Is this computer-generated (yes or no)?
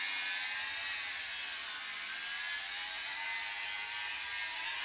no